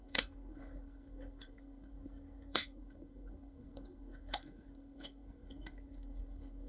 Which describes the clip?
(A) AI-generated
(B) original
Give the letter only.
A